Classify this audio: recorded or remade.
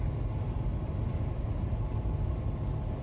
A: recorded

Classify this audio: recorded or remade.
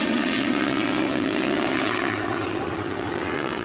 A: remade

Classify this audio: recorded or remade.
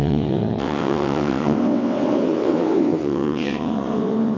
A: remade